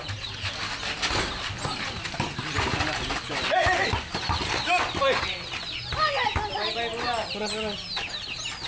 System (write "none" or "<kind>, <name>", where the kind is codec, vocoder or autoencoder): none